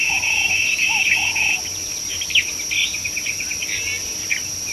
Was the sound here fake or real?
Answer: real